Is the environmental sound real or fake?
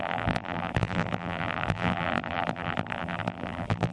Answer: fake